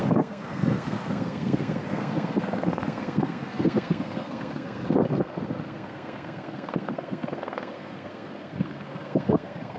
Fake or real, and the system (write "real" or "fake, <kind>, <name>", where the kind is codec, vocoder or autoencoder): fake, codec, SNAC